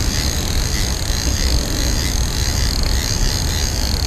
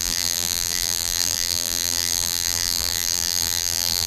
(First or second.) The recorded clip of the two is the first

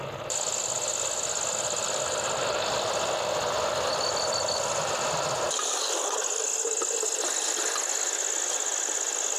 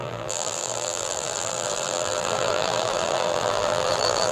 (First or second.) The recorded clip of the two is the first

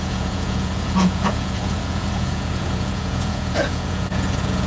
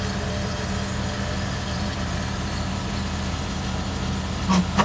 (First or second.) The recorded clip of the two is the second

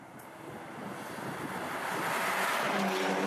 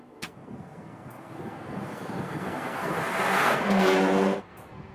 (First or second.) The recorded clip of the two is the first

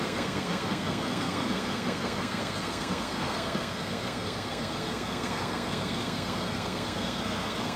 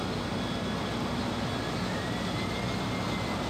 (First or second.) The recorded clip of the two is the second